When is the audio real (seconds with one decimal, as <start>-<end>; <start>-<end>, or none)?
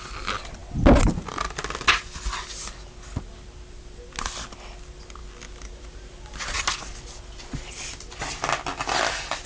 0.0-9.5